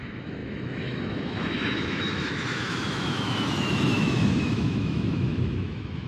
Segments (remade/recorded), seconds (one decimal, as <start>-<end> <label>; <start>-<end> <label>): 0.0-6.1 remade